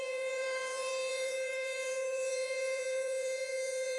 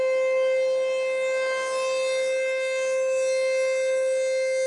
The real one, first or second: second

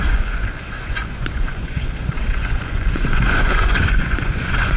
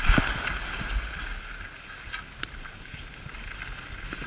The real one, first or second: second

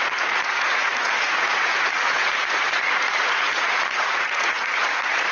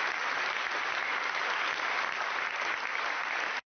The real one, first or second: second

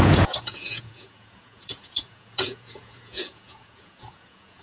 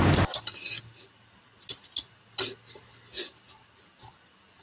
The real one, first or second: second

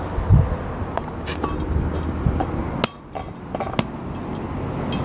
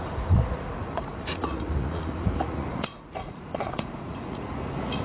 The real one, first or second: first